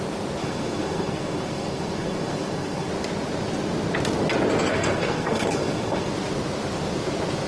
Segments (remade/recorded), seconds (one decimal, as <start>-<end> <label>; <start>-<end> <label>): 0.0-0.4 recorded; 0.4-2.9 remade; 2.9-4.7 recorded; 4.7-6.1 remade; 6.1-7.5 recorded